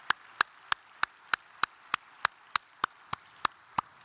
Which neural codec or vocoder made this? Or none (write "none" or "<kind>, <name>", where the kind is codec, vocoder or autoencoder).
none